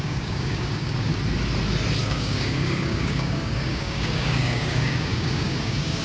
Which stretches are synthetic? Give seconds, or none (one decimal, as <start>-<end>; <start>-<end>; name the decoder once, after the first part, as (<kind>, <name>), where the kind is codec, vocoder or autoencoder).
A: 0.0-1.1 (codec, DAC); 2.0-6.0